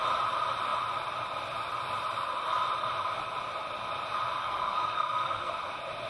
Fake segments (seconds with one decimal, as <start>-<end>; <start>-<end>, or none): 4.4-5.5